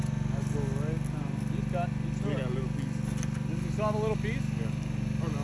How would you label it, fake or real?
real